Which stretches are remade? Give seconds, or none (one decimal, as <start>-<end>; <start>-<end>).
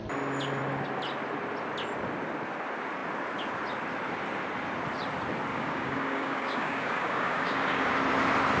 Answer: 5.5-7.9